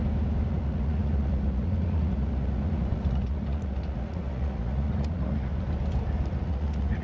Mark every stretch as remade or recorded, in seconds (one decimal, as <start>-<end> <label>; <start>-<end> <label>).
0.0-0.5 recorded; 0.5-5.5 remade; 5.5-6.3 recorded; 6.3-7.0 remade